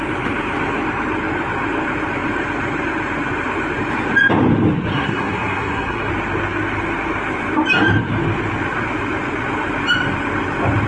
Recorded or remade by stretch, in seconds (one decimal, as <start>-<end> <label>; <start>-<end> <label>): 0.0-4.9 recorded; 4.9-6.1 remade; 6.1-10.9 recorded